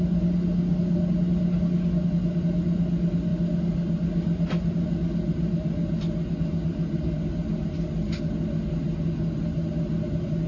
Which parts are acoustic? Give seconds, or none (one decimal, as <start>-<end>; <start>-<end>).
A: 0.0-10.5

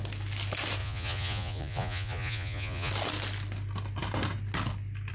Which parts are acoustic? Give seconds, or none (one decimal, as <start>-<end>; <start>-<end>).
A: 0.0-0.8; 2.9-5.1